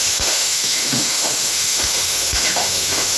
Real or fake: fake